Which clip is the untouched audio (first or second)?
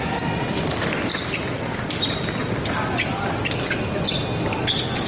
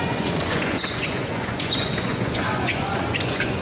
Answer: first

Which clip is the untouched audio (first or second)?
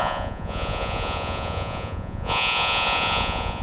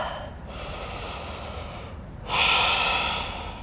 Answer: second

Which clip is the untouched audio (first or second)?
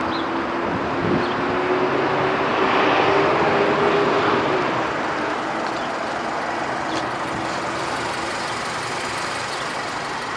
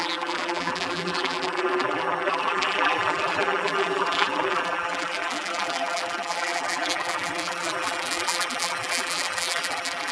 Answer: first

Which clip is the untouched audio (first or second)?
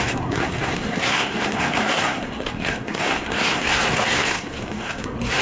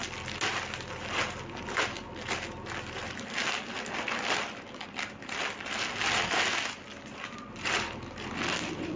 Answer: second